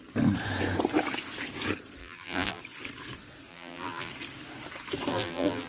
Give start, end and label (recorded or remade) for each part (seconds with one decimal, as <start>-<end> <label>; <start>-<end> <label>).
0.0-2.0 recorded; 2.0-2.6 remade; 2.6-3.5 recorded; 3.5-4.1 remade; 4.1-5.1 recorded; 5.1-5.7 remade